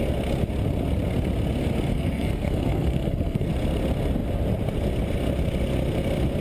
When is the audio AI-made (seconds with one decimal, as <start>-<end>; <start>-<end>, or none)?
1.9-3.5